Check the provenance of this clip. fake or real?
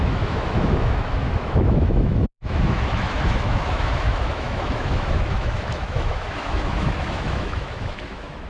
fake